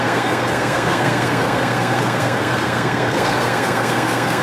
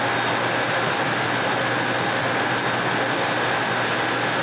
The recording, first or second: second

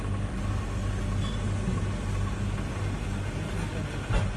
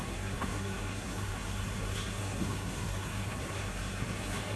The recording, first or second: first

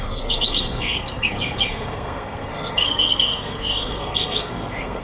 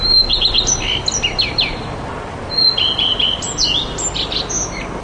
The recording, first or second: second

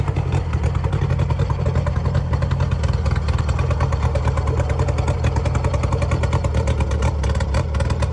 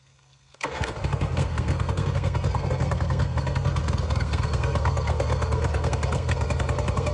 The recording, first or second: first